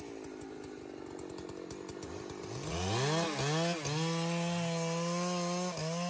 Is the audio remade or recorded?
recorded